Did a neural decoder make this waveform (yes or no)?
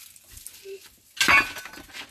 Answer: no